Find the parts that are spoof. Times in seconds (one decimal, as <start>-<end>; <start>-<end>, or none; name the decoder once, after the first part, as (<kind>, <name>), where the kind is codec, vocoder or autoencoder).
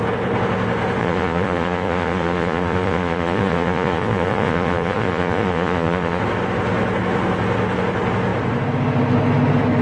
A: 1.0-6.2 (vocoder, Vocos)